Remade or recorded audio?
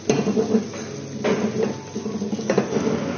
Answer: recorded